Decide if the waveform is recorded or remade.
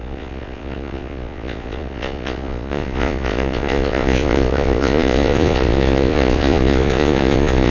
remade